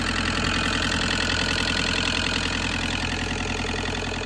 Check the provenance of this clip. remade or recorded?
recorded